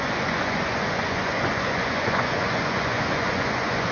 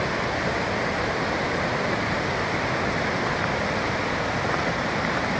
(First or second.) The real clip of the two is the second